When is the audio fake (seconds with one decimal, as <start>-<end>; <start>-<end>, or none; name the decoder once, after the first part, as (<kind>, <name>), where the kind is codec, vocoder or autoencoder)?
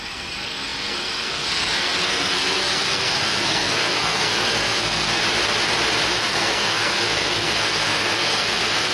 0.0-5.2 (codec, SNAC); 6.1-8.9